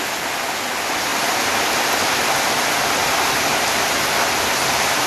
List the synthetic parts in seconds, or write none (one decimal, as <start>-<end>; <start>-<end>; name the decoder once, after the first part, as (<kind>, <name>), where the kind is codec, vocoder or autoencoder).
none